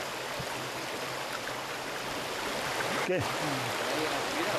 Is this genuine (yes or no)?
yes